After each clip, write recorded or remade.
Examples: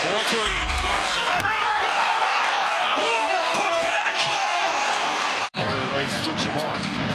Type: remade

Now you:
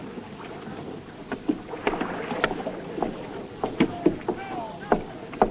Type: recorded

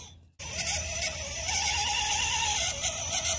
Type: recorded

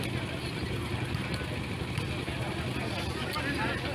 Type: recorded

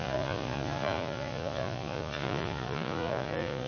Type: remade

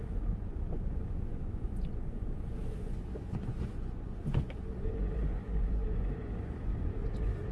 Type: remade